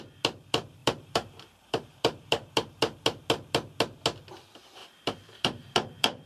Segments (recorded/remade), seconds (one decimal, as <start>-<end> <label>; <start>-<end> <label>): 0.0-0.8 recorded; 0.8-2.5 remade; 2.5-4.8 recorded; 4.8-6.3 remade